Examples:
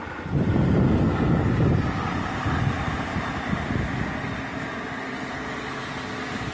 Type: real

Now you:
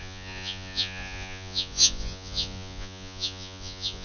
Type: fake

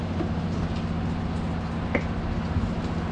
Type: real